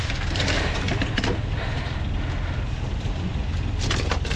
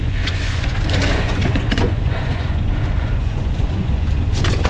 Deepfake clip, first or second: second